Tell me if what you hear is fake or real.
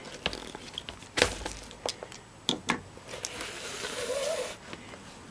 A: real